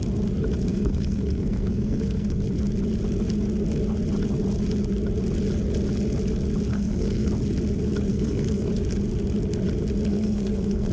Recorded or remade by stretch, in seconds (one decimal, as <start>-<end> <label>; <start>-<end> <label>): 0.0-0.7 recorded; 0.7-2.4 remade; 2.4-6.7 recorded; 6.7-7.3 remade; 7.3-8.1 recorded; 8.1-8.7 remade; 8.7-10.1 recorded; 10.1-10.9 remade